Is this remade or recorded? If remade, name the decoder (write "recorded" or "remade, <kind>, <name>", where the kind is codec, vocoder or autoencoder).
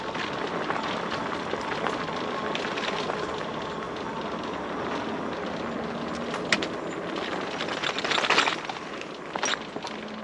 recorded